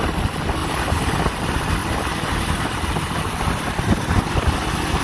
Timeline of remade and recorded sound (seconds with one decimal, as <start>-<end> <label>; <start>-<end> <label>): 0.0-0.6 recorded; 0.6-1.2 remade; 1.2-5.0 recorded